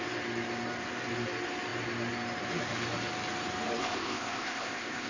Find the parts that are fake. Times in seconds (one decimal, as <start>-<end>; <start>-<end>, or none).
3.8-5.1